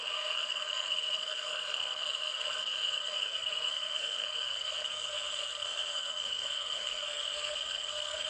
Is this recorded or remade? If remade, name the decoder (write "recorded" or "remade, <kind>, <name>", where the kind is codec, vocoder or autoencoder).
remade, codec, SNAC